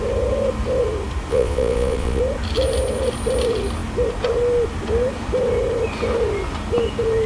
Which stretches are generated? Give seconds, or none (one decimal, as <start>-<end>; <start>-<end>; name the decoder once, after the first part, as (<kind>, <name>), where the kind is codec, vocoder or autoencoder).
1.3-2.2 (vocoder, Vocos)